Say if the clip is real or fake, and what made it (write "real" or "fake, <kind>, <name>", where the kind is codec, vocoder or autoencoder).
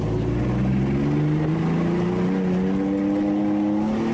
real